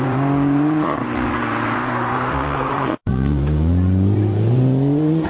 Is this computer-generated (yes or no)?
yes